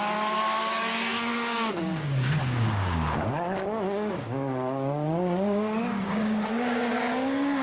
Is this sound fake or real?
fake